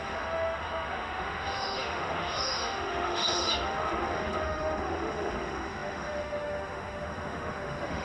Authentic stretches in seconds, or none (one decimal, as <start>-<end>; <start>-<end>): none